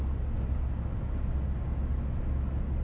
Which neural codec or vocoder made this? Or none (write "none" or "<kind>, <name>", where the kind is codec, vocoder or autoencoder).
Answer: none